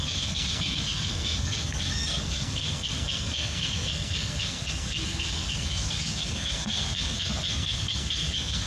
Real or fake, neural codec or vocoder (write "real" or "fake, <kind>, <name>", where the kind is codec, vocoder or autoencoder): fake, codec, SNAC